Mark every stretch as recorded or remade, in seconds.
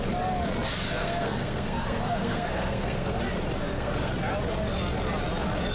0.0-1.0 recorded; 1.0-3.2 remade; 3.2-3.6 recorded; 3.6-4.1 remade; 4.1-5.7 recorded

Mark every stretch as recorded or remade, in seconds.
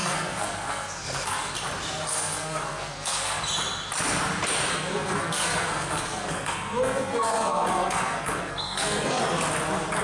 0.0-1.5 remade; 1.5-2.1 recorded; 2.1-3.4 remade; 3.4-4.7 recorded; 4.7-9.2 remade; 9.2-10.0 recorded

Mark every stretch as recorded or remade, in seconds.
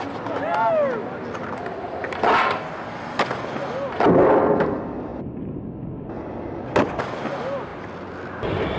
0.0-8.8 recorded